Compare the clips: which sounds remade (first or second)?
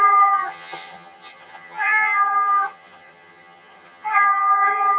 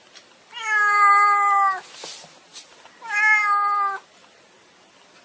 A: first